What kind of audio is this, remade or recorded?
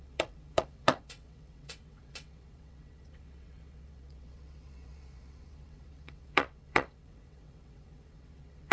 remade